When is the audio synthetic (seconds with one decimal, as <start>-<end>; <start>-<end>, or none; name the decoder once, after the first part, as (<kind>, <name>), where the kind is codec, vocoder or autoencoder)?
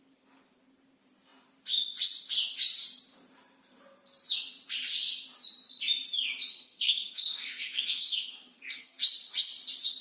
6.5-9.0 (codec, SNAC)